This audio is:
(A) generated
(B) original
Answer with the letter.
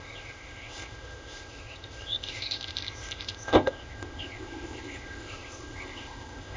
A